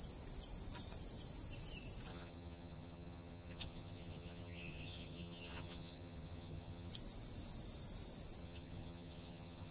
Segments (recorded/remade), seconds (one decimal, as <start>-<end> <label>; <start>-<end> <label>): 0.0-2.1 recorded; 2.1-6.9 remade; 6.9-8.4 recorded; 8.4-9.7 remade

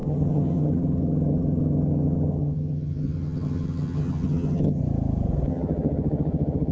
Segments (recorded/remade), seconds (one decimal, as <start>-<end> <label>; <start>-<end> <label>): 0.0-4.8 remade; 4.8-5.5 recorded; 5.5-6.7 remade

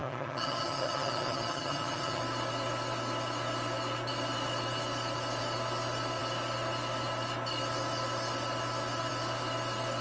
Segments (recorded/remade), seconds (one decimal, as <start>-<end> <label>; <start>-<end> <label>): 0.0-2.2 remade; 2.2-10.0 recorded

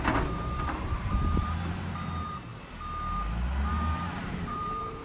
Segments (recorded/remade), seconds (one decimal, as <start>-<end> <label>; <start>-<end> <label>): 0.0-2.5 remade; 2.5-3.7 recorded; 3.7-5.0 remade

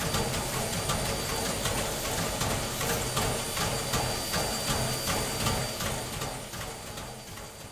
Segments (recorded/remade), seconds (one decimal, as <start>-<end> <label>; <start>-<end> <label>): 0.0-7.7 recorded

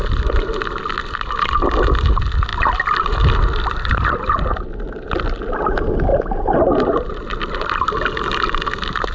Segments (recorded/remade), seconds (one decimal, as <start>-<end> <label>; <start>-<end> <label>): 0.0-0.8 remade; 0.8-2.5 recorded; 2.5-4.0 remade; 4.0-6.1 recorded; 6.1-7.9 remade; 7.9-9.1 recorded

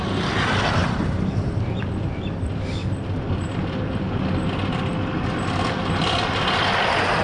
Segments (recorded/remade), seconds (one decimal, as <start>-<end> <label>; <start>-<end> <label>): 0.0-0.8 recorded; 0.8-1.8 remade; 1.8-7.2 recorded